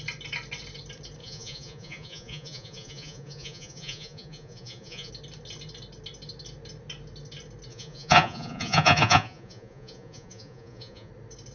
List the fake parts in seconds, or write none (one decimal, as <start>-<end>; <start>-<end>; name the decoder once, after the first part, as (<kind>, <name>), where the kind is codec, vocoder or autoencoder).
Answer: 1.2-5.1 (vocoder, Vocos); 7.7-11.1